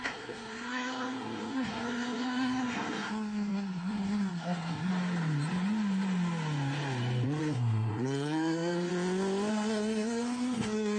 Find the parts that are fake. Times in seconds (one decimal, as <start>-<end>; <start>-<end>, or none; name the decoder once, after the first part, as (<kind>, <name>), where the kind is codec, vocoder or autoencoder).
0.0-4.9 (codec, SNAC); 7.4-8.9; 9.5-11.0